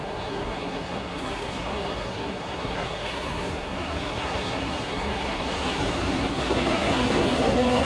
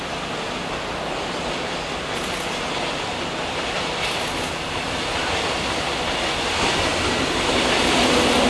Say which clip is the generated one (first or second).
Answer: first